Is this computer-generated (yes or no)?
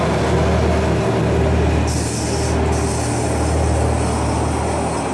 no